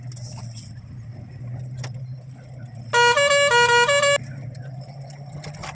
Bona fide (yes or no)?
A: yes